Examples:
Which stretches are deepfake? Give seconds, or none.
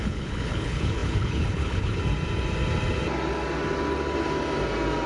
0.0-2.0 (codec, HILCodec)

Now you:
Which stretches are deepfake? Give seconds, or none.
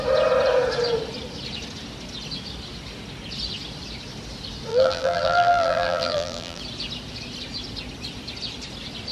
4.7-6.6 (vocoder, BigVGAN v2)